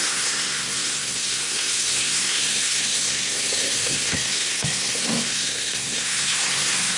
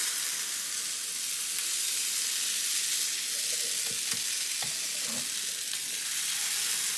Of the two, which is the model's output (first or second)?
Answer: first